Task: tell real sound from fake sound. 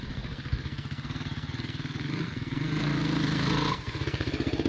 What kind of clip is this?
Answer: fake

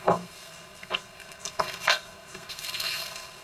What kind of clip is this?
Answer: fake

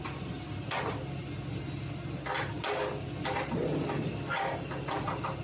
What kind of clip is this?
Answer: real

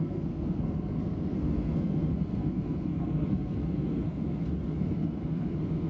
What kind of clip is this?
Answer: fake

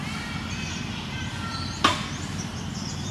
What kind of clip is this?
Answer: real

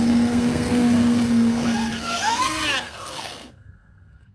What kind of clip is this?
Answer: fake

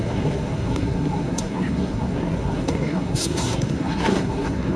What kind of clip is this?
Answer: fake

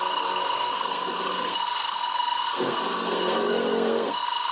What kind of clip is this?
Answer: fake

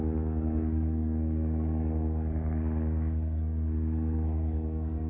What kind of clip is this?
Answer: fake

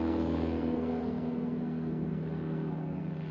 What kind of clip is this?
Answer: fake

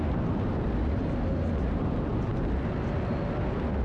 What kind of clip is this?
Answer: real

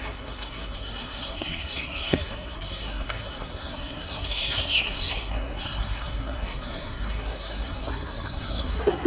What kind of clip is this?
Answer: fake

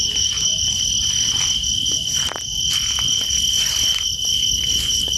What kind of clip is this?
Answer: real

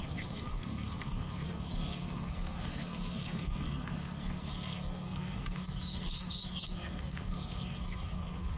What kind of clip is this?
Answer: fake